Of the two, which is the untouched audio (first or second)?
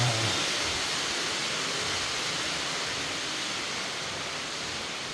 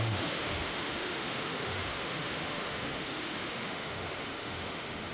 first